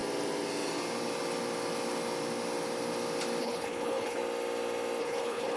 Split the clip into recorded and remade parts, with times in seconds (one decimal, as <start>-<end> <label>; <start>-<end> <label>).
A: 0.0-3.4 recorded; 3.4-4.2 remade; 4.2-5.0 recorded; 5.0-5.6 remade